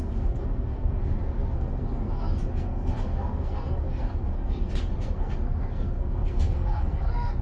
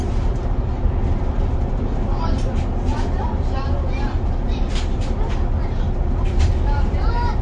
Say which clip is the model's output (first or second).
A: first